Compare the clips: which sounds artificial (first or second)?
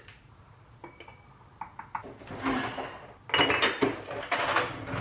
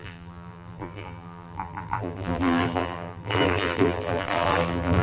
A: second